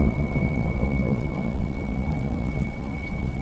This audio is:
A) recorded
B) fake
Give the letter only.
B